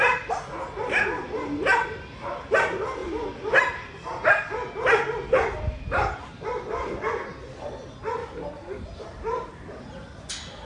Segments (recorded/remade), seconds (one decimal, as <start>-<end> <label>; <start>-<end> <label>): 0.0-10.6 recorded